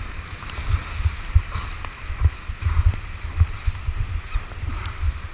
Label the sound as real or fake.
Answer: real